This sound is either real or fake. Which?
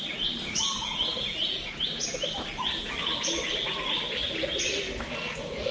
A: real